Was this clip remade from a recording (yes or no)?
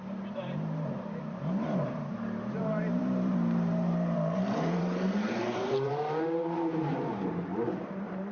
yes